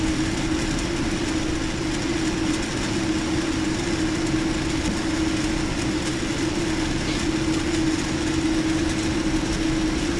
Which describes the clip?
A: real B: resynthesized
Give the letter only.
A